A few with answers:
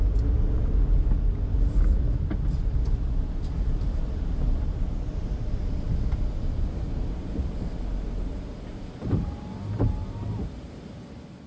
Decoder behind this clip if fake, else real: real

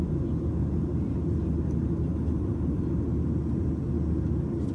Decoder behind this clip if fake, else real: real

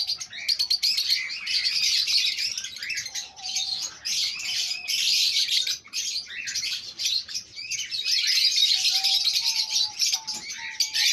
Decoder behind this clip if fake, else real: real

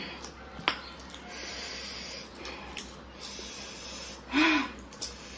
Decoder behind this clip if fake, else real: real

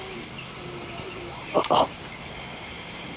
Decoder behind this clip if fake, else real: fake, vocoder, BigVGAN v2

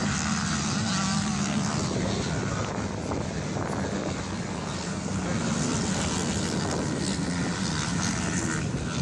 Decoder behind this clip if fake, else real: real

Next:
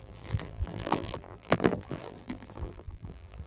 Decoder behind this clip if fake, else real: fake, vocoder, BigVGAN v2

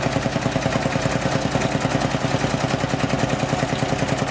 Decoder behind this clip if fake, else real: real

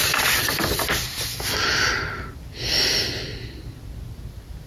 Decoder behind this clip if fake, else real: real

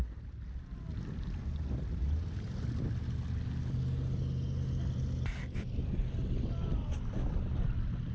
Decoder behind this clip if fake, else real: real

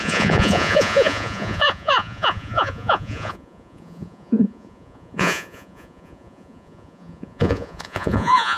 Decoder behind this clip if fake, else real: fake, vocoder, Vocos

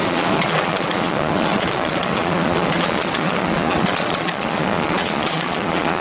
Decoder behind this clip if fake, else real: fake, vocoder, Vocos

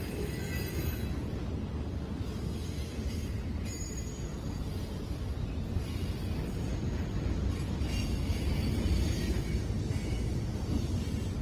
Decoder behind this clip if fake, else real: real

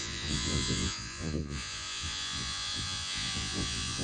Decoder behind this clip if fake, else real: fake, vocoder, Vocos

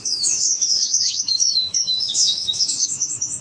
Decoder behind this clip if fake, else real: fake, autoencoder, DAC-VAE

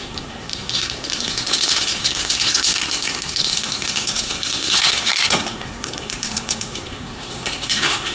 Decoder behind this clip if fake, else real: fake, codec, SNAC